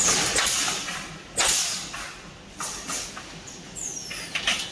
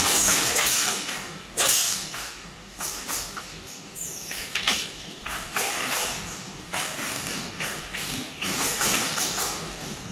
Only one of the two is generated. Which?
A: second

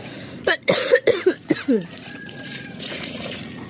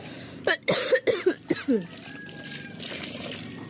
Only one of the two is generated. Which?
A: first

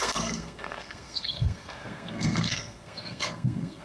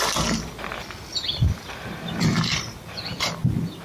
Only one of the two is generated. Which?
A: first